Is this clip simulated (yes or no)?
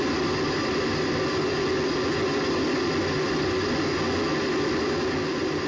no